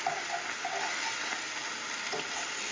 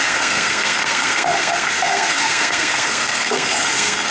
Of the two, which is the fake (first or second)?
second